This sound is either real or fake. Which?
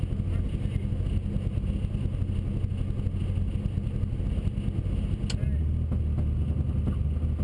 real